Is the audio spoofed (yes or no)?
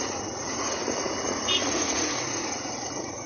yes